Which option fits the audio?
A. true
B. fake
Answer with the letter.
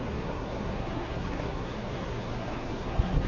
B